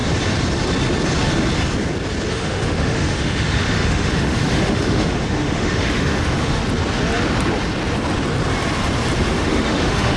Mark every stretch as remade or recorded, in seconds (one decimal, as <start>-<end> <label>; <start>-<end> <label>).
0.0-2.3 recorded; 2.3-6.6 remade; 6.6-9.3 recorded; 9.3-10.2 remade